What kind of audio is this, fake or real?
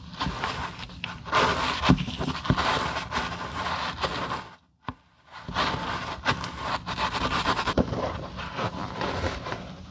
real